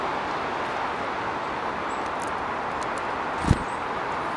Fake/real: real